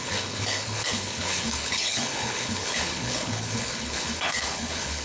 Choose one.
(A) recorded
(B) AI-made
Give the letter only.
B